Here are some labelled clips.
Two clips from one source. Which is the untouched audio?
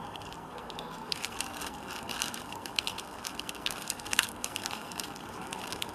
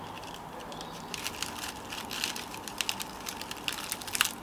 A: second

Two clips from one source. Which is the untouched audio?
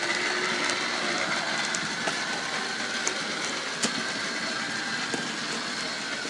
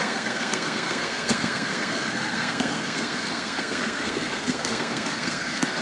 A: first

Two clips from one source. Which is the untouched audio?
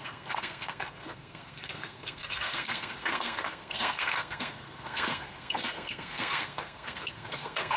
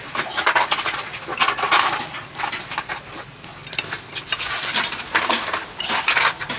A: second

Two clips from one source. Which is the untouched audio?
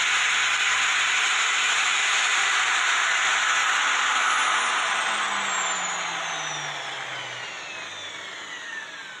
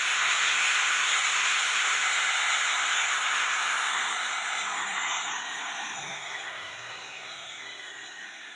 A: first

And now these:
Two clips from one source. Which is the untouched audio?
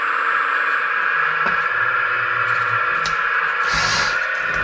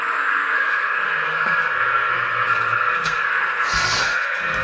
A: first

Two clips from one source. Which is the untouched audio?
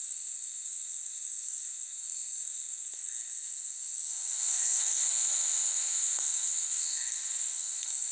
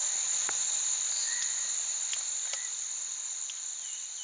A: second